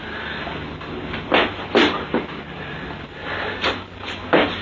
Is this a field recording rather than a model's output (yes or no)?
yes